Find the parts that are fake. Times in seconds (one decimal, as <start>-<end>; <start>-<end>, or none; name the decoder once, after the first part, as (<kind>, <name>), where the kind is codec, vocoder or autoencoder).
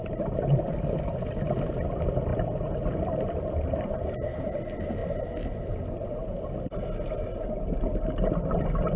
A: none